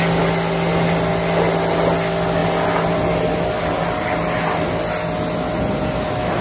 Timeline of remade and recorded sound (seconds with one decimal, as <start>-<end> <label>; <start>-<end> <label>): 0.0-6.4 recorded

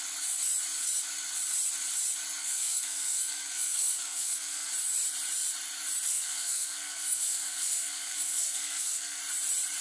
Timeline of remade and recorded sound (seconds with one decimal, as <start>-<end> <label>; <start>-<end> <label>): 0.0-2.4 recorded; 2.4-4.7 remade; 4.7-6.1 recorded; 6.1-9.2 remade; 9.2-9.8 recorded

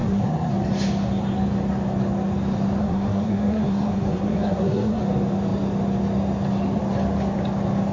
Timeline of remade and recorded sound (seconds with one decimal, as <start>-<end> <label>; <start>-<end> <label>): 0.0-0.5 remade; 0.5-2.8 recorded; 2.8-5.0 remade; 5.0-7.9 recorded